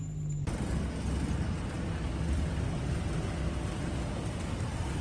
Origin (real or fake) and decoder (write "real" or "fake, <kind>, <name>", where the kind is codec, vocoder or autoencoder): real